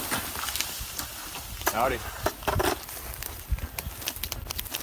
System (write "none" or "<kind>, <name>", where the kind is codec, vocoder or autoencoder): none